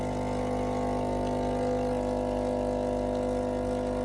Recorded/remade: recorded